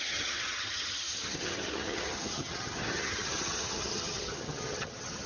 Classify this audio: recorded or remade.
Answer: remade